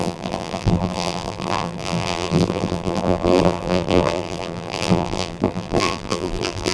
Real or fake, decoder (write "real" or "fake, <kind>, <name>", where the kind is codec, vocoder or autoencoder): fake, vocoder, BigVGAN v2